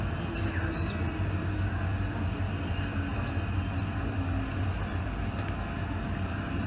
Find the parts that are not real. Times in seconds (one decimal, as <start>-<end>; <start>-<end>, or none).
none